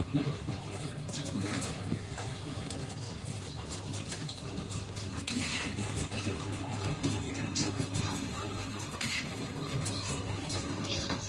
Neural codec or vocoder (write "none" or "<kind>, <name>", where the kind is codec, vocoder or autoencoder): codec, SNAC